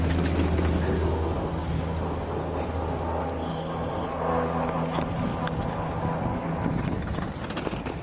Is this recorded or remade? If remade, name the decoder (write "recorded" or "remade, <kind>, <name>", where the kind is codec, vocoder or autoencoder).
recorded